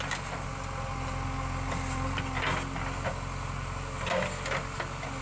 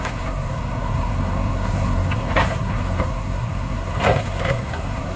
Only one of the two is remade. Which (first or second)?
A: second